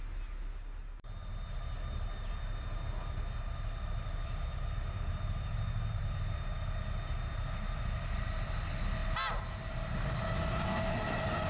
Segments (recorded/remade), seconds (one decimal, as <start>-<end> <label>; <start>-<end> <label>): 0.0-11.5 recorded